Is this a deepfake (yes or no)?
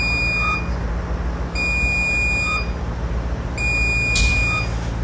no